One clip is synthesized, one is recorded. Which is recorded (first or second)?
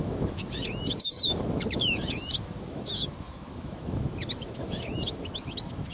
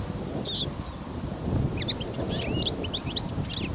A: second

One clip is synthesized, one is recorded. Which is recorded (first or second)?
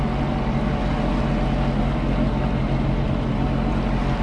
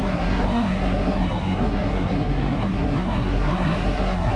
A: first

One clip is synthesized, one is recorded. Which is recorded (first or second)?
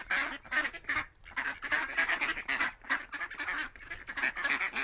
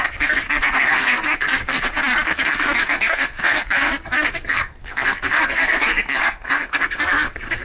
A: first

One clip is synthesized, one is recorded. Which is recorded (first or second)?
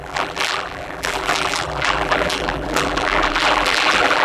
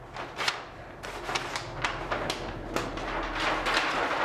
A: second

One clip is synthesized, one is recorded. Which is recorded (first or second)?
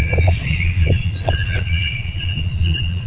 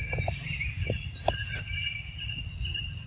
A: second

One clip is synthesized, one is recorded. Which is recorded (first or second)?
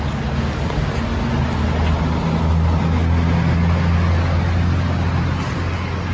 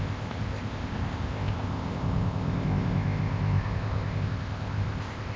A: first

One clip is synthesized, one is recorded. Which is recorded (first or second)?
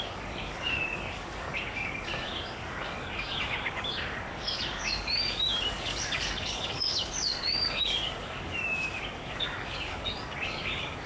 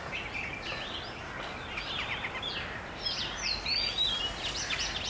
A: second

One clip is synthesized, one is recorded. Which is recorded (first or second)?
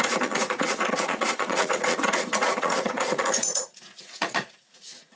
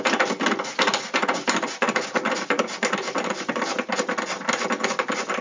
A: second